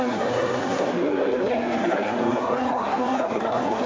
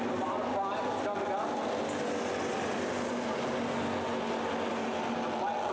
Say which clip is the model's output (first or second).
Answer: first